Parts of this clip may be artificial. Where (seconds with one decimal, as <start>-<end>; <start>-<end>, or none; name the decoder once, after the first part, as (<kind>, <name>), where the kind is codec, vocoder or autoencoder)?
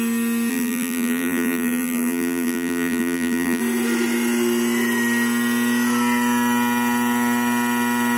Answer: 0.5-3.6 (vocoder, BigVGAN v2)